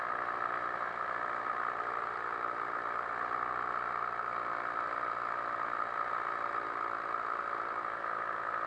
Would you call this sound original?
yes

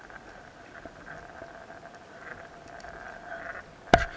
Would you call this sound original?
yes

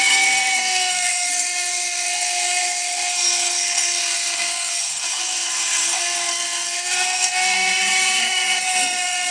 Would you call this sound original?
no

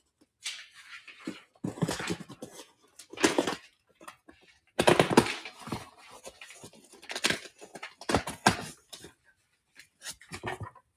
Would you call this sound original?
yes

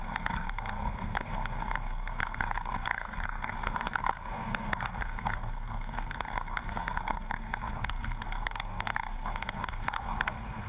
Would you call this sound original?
no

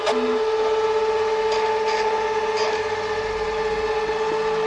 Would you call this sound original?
yes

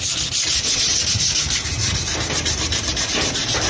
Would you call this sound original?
yes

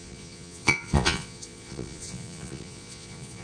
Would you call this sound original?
no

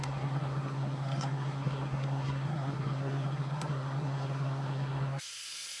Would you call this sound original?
no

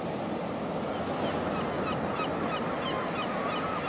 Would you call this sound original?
yes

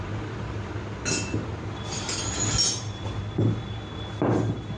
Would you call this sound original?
yes